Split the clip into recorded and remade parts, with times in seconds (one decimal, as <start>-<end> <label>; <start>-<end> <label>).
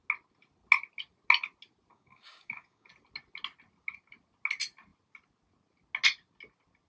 0.0-1.9 recorded; 1.9-2.9 remade; 2.9-6.9 recorded